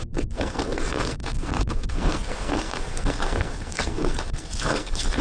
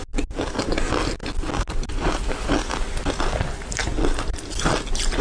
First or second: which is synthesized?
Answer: first